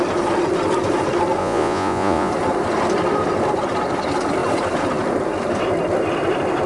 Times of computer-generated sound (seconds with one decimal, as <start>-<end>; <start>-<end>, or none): 1.4-2.3